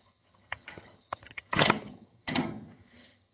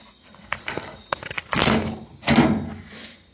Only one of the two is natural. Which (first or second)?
second